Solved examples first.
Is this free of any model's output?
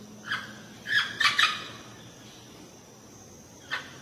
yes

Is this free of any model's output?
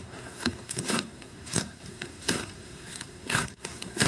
no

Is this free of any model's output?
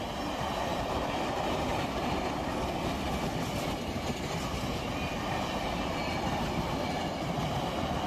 yes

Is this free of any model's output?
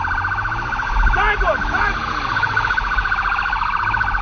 yes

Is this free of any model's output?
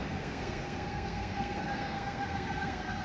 no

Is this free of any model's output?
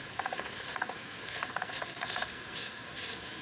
no